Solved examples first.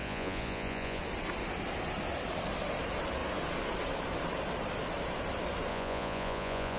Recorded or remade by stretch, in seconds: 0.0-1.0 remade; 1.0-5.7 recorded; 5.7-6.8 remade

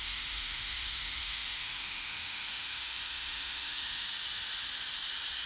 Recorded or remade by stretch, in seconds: 0.0-4.0 remade; 4.0-5.5 recorded

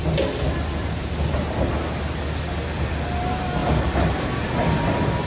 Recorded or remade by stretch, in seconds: 0.0-5.3 recorded

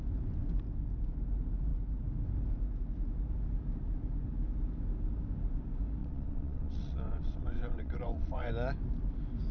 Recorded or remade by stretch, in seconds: 0.0-6.0 recorded; 6.0-8.5 remade; 8.5-9.5 recorded

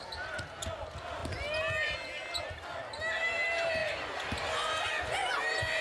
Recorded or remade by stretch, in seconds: 0.0-3.8 recorded; 3.8-4.9 remade; 4.9-5.8 recorded

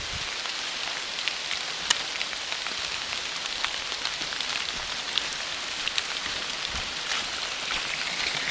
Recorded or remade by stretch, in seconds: 0.0-8.5 recorded

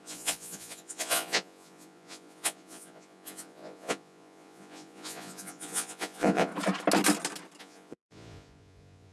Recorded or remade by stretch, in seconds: 0.0-6.5 remade; 6.5-7.6 recorded; 7.6-9.1 remade